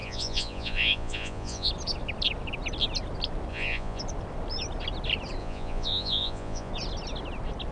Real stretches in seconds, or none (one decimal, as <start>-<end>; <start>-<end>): 1.7-3.5; 4.0-5.4; 6.7-7.7